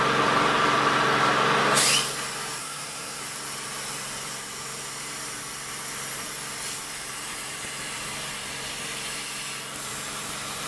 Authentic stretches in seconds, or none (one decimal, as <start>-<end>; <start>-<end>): 0.0-2.6; 3.2-10.7

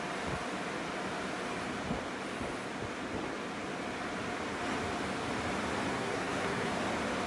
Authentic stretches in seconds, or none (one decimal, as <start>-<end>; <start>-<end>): 0.0-5.9; 6.7-7.3

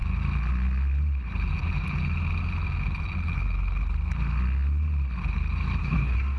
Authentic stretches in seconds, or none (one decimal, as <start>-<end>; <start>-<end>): 0.0-5.8

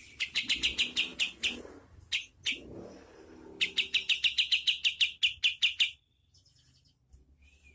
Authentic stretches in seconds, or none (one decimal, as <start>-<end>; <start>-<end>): 0.0-7.7

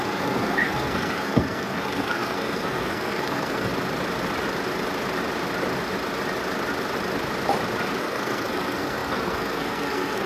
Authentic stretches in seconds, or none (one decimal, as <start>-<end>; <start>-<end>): 3.7-8.0

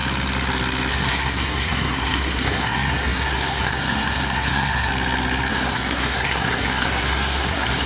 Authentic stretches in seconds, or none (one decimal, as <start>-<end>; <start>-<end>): 0.0-0.9; 4.9-5.5

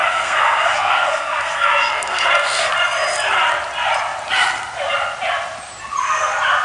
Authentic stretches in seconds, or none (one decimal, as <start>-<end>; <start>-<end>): 2.7-6.6